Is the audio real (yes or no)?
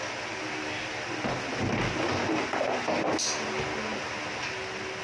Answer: yes